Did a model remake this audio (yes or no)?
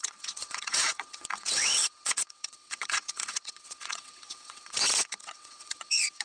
yes